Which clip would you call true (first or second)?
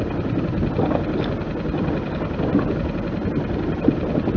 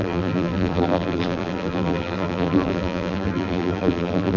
first